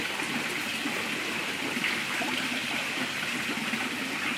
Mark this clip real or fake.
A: real